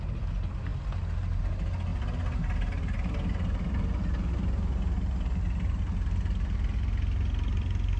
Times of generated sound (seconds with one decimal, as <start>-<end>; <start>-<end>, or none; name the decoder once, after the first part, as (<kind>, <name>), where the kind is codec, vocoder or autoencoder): none